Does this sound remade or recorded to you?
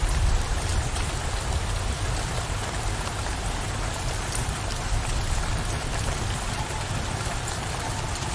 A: remade